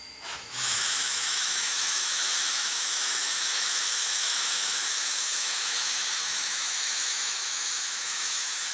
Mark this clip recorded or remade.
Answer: remade